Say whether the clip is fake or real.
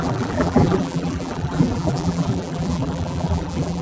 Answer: fake